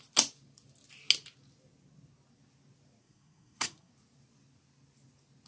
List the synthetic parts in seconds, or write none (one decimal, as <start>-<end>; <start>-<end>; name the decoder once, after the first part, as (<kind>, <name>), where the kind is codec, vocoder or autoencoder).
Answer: 3.0-3.9 (codec, SNAC)